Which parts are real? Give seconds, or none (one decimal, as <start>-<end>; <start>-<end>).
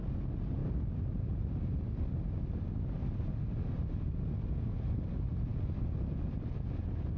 0.0-7.2